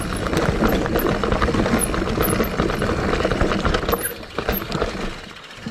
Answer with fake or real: real